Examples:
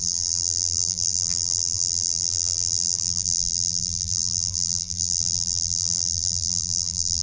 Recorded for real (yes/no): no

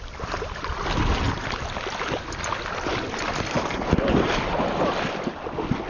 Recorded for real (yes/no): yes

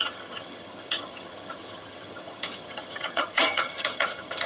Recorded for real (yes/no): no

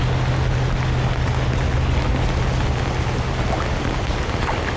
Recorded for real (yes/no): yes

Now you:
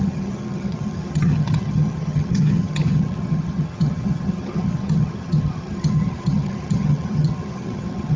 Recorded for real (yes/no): no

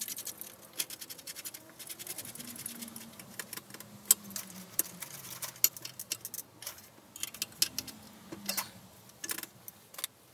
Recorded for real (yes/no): yes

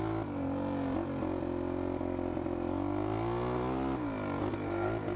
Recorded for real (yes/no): yes